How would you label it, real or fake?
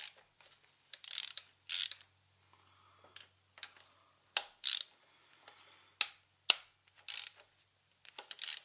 real